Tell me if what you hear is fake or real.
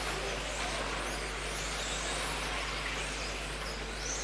real